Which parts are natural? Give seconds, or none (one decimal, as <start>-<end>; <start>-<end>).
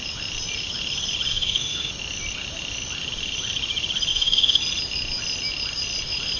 0.0-1.3; 1.9-4.1; 4.6-6.4